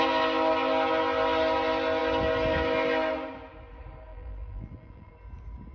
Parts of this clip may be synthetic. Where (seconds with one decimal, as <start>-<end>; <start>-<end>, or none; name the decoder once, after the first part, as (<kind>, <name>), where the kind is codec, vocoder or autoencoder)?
4.1-5.1 (vocoder, BigVGAN v2)